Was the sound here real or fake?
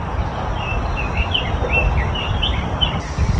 real